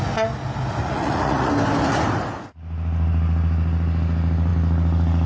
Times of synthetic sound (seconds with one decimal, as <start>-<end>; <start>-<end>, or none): 0.8-1.5